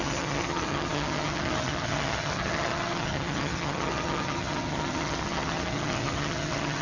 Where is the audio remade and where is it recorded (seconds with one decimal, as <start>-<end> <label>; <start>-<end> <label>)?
0.0-6.8 remade